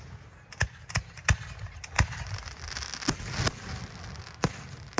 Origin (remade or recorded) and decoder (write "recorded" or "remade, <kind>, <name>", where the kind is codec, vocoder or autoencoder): recorded